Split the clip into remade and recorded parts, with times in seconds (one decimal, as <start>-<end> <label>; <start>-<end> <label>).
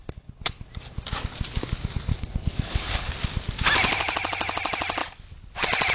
0.0-0.7 remade; 0.7-2.1 recorded; 2.1-3.1 remade; 3.1-5.9 recorded